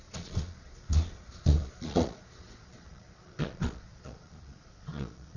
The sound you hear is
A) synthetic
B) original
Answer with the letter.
A